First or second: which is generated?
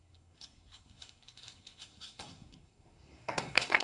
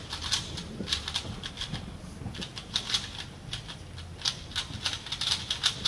first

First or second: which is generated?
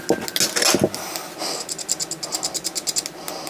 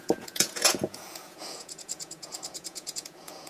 second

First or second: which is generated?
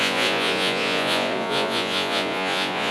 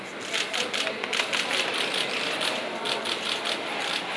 first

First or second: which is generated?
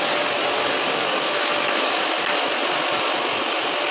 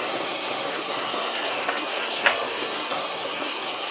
second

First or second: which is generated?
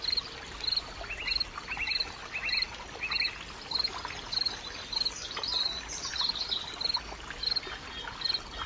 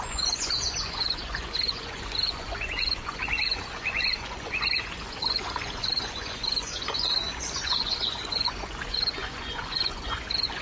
second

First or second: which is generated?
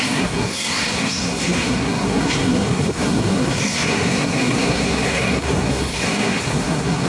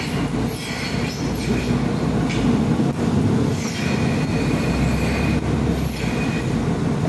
first